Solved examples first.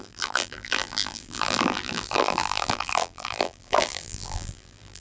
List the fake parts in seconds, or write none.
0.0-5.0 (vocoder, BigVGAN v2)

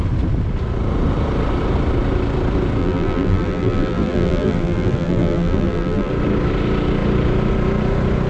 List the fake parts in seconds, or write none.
2.8-6.1 (vocoder, BigVGAN v2)